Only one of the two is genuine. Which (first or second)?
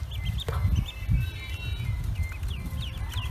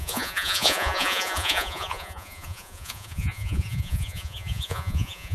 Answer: first